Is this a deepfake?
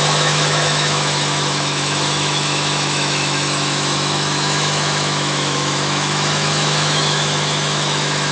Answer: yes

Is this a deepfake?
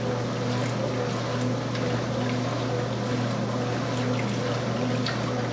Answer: no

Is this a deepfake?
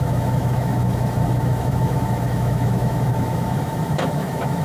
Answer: yes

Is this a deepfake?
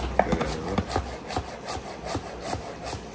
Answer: no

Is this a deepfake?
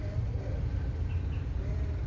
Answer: no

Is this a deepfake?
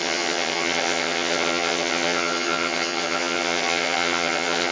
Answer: yes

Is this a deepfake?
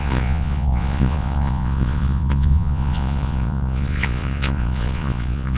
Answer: yes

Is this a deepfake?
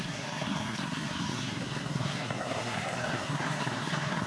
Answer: yes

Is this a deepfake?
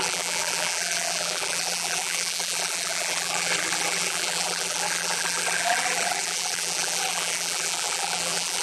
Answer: yes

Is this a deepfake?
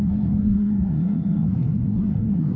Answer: yes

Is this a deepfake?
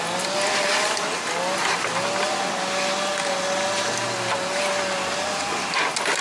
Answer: no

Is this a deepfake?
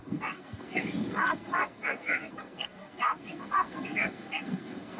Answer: yes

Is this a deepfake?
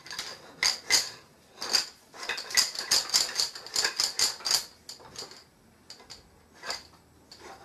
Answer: no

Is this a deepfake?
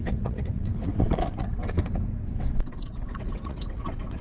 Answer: yes